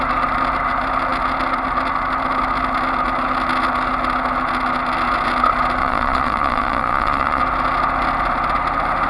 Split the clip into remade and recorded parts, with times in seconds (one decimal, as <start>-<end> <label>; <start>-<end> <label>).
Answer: 0.0-5.8 recorded; 5.8-7.4 remade; 7.4-9.1 recorded